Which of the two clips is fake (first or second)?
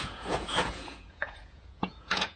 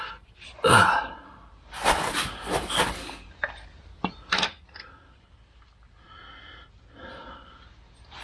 first